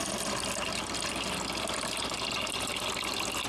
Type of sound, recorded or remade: recorded